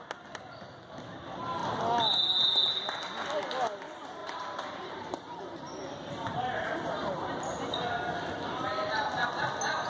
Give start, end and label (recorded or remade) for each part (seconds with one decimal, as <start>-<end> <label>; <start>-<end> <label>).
0.0-4.2 recorded; 4.2-7.4 remade; 7.4-9.9 recorded

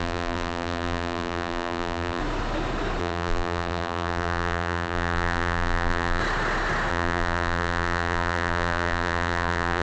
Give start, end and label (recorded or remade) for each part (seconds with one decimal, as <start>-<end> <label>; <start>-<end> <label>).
0.0-2.2 remade; 2.2-3.0 recorded; 3.0-6.2 remade; 6.2-6.9 recorded; 6.9-9.8 remade

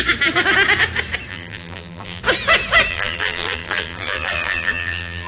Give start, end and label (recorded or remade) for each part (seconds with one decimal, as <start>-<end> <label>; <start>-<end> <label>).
0.0-1.3 recorded; 1.3-2.2 remade; 2.2-2.9 recorded; 2.9-5.3 remade

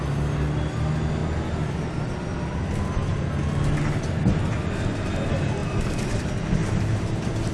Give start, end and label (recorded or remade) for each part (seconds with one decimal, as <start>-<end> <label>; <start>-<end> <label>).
0.0-6.6 recorded; 6.6-7.5 remade

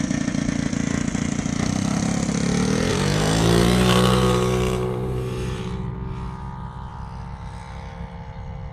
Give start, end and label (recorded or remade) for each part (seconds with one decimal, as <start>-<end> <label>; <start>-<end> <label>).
0.0-2.9 recorded; 2.9-5.9 remade; 5.9-8.7 recorded

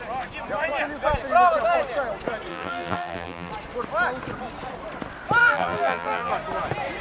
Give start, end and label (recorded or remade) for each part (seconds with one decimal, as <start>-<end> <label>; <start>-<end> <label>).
0.0-2.5 recorded; 2.5-3.5 remade; 3.5-5.4 recorded; 5.4-6.3 remade; 6.3-7.0 recorded

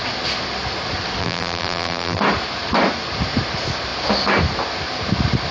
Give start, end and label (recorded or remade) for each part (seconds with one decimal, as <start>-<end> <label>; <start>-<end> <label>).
0.0-1.2 recorded; 1.2-2.2 remade; 2.2-5.5 recorded

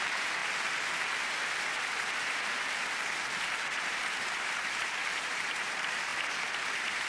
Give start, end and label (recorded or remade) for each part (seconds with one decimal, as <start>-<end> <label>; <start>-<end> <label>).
0.0-0.4 remade; 0.4-4.7 recorded; 4.7-6.1 remade; 6.1-7.1 recorded